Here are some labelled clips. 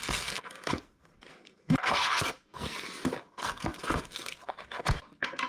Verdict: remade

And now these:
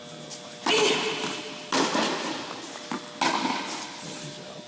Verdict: recorded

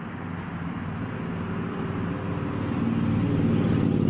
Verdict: recorded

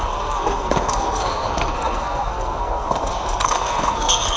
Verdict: remade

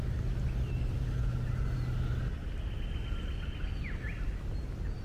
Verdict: recorded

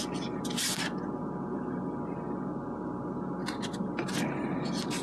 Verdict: recorded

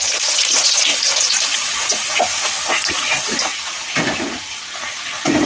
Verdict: remade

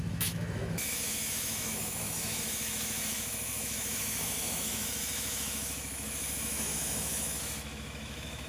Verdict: remade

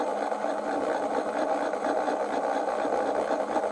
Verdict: remade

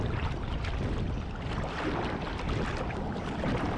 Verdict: recorded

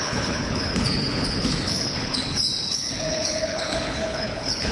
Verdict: remade